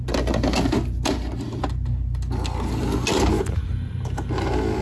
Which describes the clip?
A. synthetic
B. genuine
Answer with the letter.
B